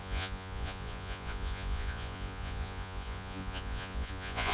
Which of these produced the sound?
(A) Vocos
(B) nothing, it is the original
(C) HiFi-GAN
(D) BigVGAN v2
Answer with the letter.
A